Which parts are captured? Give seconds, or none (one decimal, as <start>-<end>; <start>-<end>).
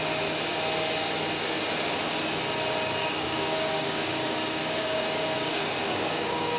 0.0-3.0